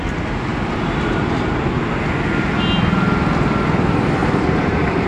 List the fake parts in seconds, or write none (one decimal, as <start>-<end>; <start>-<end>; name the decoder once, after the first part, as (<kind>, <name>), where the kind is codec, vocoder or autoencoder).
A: 4.2-5.1 (vocoder, BigVGAN v2)